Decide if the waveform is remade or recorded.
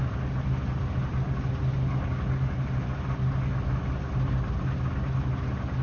recorded